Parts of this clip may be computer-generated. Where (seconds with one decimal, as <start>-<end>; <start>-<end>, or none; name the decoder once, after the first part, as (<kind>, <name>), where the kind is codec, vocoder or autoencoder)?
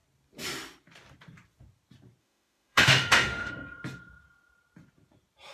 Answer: 2.2-3.5 (autoencoder, DAC-VAE)